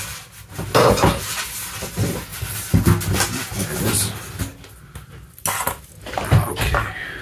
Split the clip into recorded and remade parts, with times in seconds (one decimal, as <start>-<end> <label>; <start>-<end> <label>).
0.0-7.2 recorded

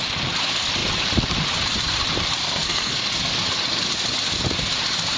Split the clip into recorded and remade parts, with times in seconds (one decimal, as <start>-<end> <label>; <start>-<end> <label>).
0.0-2.4 recorded; 2.4-3.0 remade; 3.0-5.2 recorded

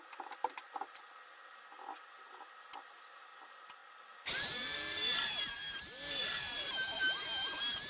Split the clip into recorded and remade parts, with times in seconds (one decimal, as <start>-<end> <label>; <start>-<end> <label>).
0.0-7.9 recorded

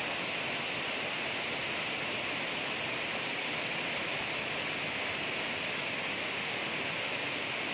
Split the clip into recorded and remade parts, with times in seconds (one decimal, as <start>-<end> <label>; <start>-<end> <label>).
0.0-6.1 recorded; 6.1-6.7 remade; 6.7-7.7 recorded